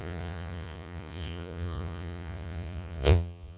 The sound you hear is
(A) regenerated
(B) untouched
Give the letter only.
A